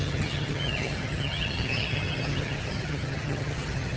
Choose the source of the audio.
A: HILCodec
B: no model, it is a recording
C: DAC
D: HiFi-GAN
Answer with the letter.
D